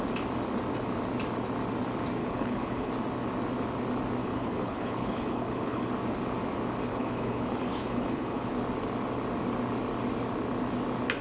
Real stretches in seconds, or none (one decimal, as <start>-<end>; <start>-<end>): 0.0-2.2; 2.9-4.2; 5.9-6.9; 8.5-11.2